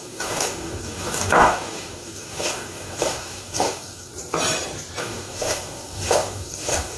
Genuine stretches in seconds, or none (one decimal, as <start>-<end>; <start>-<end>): 4.1-5.0